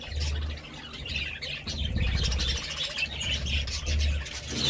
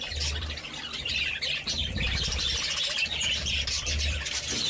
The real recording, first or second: first